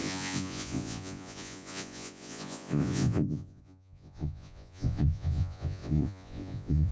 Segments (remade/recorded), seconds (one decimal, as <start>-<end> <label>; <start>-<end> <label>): 0.0-6.9 remade